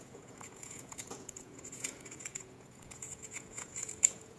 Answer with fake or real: fake